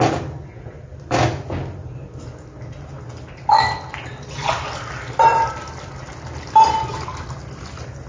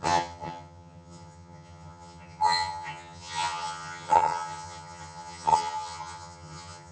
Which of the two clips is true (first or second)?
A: first